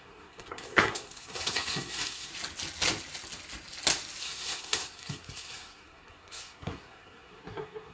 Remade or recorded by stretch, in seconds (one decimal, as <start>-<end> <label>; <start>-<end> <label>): 0.0-2.3 remade; 2.3-4.2 recorded; 4.2-7.9 remade

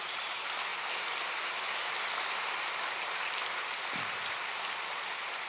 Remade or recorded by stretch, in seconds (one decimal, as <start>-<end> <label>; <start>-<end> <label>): 0.0-5.5 recorded

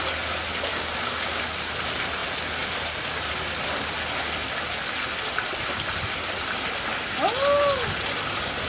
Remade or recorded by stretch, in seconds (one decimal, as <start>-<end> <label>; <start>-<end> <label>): 0.0-0.7 recorded; 0.7-1.4 remade; 1.4-8.7 recorded

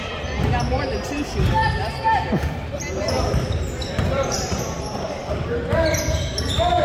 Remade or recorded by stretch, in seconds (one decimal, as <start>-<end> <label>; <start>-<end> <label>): 0.0-1.6 remade; 1.6-3.0 recorded; 3.0-5.2 remade; 5.2-6.8 recorded

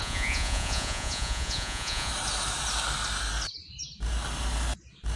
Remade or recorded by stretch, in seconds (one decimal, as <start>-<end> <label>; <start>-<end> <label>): 0.0-2.1 remade; 2.1-5.2 recorded

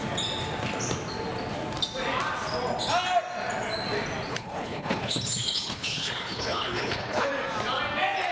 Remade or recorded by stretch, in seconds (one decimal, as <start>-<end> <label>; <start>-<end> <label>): 0.0-4.3 recorded; 4.3-7.3 remade; 7.3-8.3 recorded